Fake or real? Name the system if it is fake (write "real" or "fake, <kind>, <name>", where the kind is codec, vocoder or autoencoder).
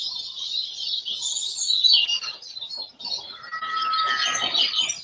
real